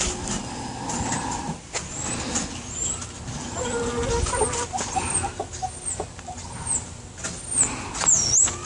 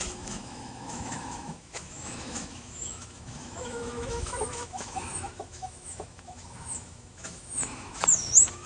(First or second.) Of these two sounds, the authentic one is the first